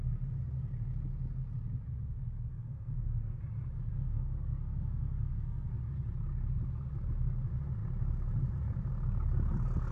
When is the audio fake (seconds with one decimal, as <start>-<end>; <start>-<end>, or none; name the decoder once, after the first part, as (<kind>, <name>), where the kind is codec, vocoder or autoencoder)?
2.5-3.4 (codec, SNAC); 3.9-5.8